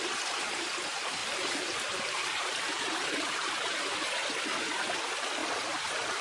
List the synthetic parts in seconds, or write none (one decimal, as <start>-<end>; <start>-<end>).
1.2-3.8; 5.4-6.2